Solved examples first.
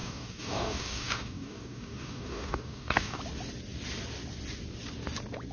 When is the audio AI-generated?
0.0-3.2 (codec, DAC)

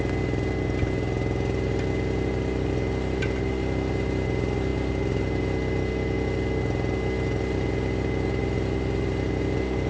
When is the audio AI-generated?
none

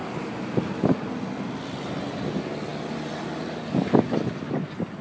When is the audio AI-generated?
none

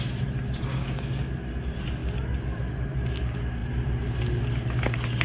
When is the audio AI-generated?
0.7-1.3 (codec, DAC)

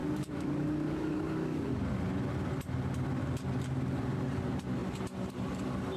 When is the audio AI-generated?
0.0-1.7 (codec, DAC)

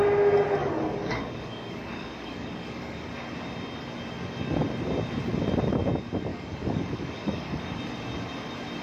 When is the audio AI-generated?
0.6-3.1 (codec, DAC); 6.3-7.8